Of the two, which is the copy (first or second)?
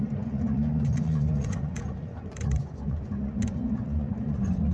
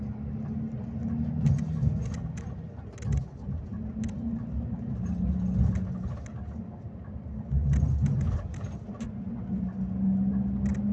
first